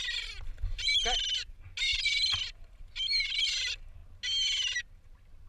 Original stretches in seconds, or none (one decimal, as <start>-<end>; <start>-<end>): 0.0-5.5